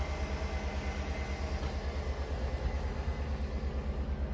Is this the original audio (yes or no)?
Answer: yes